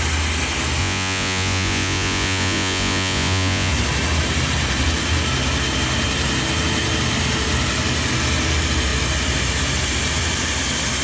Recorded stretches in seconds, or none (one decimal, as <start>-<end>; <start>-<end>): 0.0-0.8; 3.7-11.0